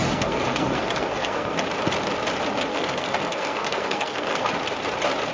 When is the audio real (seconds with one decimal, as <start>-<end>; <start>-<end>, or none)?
1.6-2.7; 4.5-5.3